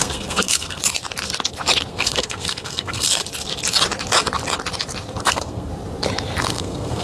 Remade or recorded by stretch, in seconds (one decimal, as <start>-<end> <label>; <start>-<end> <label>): 0.0-0.8 remade; 0.8-1.9 recorded; 1.9-3.2 remade; 3.2-5.2 recorded; 5.2-5.7 remade; 5.7-6.4 recorded; 6.4-7.0 remade